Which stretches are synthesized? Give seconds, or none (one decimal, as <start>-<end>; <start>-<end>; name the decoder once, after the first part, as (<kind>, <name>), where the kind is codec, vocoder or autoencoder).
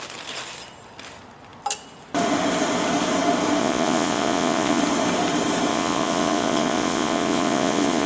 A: 3.6-4.8 (vocoder, Vocos); 5.7-8.1